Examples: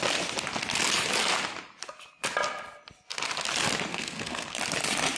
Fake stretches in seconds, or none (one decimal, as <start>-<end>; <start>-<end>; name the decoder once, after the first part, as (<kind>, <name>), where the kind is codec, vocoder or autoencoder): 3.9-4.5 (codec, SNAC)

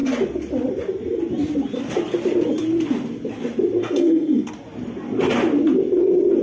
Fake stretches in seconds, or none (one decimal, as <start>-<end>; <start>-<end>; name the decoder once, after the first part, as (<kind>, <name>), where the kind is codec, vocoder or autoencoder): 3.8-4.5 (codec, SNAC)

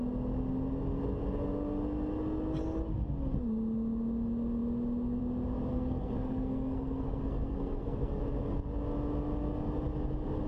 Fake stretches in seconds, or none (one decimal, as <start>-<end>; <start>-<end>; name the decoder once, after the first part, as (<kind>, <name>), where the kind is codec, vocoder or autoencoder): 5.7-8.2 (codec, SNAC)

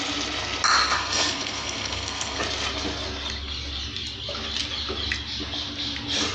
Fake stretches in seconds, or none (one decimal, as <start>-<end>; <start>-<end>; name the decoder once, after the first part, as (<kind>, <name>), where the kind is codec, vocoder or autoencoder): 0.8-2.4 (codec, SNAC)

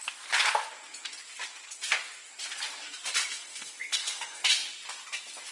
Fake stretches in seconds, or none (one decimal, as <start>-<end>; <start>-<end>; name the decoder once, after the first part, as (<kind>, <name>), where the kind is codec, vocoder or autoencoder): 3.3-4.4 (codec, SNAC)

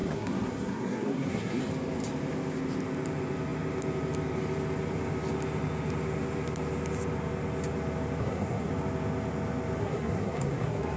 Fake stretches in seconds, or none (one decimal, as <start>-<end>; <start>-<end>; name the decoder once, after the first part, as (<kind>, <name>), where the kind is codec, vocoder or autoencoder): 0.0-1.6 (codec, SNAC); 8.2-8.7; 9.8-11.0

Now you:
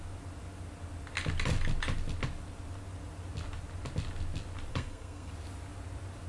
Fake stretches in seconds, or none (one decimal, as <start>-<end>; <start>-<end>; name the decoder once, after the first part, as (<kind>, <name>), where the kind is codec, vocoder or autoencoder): 4.7-5.3 (codec, SNAC)

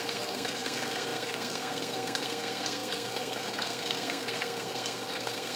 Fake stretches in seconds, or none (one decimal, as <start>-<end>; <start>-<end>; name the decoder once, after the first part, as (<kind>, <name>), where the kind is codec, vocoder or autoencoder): 0.0-5.6 (codec, SNAC)